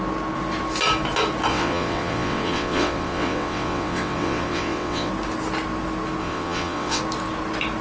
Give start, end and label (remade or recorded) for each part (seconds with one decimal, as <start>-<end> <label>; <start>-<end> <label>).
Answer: 0.0-1.5 recorded; 1.5-5.1 remade; 5.1-6.2 recorded; 6.2-7.0 remade; 7.0-7.8 recorded